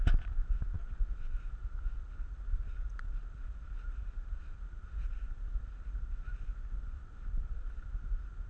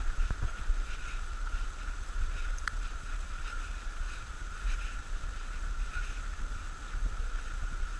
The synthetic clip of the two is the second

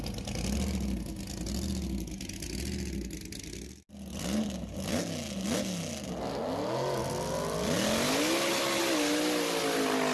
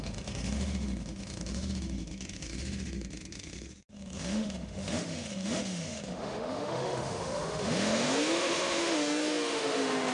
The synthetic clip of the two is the second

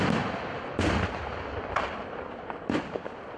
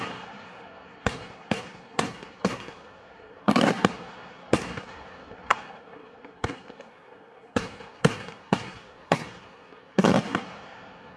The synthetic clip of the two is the second